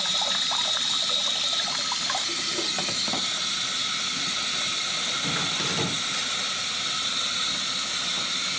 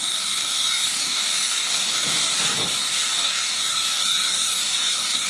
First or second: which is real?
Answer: first